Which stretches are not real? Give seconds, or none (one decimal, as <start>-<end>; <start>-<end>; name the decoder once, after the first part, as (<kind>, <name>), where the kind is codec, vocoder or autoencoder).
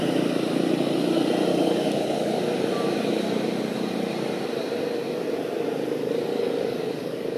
1.5-2.4 (codec, DAC); 6.3-7.4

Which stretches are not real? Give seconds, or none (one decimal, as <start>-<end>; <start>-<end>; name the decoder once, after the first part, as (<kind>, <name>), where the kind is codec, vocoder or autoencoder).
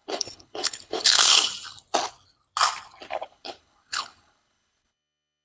0.0-1.5 (codec, HILCodec); 3.1-5.4